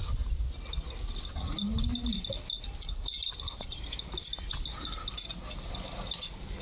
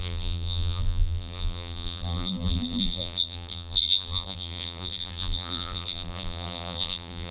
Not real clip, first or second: second